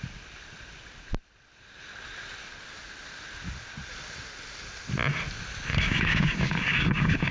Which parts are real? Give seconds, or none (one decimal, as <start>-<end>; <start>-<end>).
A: 0.0-5.7